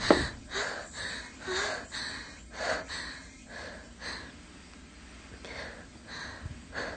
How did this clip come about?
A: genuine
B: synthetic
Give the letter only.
A